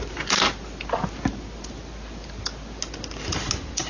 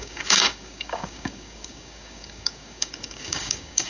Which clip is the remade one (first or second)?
second